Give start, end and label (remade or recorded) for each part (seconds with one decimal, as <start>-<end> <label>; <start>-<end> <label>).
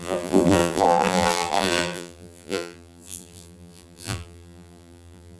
0.0-5.4 remade